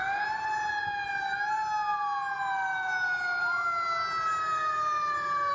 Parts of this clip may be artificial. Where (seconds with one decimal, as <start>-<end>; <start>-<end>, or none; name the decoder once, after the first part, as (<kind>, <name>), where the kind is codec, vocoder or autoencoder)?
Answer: none